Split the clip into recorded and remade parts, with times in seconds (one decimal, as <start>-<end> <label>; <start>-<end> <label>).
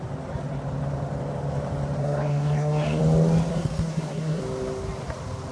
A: 0.0-2.0 recorded; 2.0-3.0 remade; 3.0-3.5 recorded; 3.5-4.4 remade; 4.4-5.5 recorded